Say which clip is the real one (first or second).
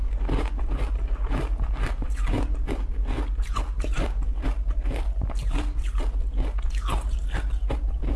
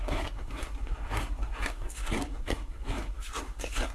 first